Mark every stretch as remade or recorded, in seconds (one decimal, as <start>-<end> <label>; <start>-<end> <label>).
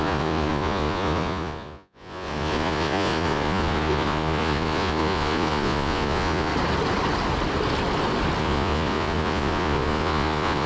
0.0-6.5 remade; 6.5-8.4 recorded; 8.4-10.7 remade